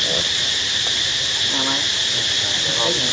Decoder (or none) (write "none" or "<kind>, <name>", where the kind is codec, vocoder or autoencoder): none